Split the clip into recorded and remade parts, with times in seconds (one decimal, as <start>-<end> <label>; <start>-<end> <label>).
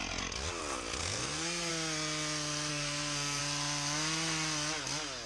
0.0-1.0 recorded; 1.0-1.7 remade; 1.7-2.7 recorded; 2.7-3.4 remade; 3.4-5.3 recorded